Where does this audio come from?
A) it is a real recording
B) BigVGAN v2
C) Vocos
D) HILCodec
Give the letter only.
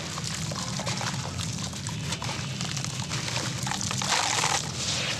A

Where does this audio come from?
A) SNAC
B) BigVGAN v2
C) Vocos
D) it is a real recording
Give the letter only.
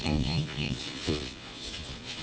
C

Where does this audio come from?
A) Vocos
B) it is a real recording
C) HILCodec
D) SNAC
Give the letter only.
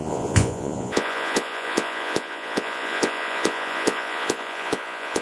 A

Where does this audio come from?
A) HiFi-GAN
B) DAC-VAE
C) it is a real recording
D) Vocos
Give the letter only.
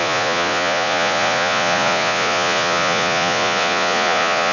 D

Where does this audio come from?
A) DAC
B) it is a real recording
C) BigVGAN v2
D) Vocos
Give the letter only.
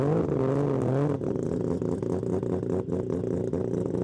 B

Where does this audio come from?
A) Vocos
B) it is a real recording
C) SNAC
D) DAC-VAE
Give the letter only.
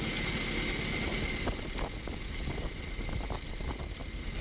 B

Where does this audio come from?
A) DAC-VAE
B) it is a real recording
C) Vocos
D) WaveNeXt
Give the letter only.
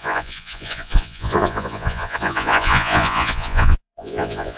C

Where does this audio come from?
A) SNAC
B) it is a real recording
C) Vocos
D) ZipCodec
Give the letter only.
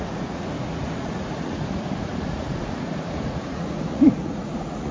C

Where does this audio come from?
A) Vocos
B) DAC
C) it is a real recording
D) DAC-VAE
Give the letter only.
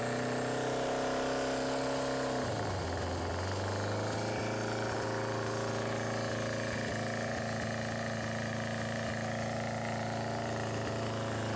C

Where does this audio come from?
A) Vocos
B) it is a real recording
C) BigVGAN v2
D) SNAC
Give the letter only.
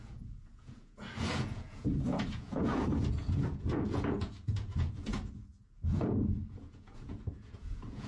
A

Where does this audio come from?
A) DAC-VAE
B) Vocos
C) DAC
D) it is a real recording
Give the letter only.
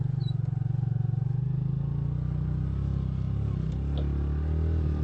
D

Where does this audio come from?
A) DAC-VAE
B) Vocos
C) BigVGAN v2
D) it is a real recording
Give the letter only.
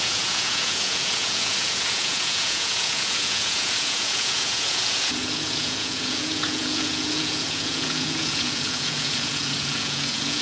B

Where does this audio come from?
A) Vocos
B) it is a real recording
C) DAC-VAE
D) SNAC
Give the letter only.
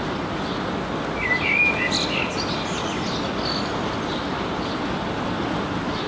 B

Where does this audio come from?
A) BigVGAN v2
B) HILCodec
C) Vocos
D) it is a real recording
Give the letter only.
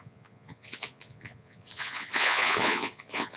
C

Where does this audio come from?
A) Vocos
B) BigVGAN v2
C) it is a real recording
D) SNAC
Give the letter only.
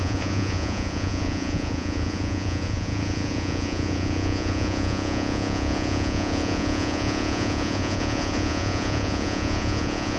A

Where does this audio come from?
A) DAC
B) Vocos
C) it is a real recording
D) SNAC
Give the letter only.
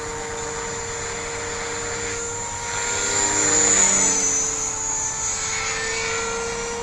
C